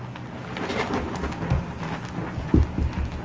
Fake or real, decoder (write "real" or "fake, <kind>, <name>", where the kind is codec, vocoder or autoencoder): real